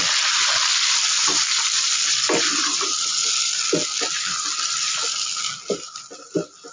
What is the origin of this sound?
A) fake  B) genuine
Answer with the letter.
B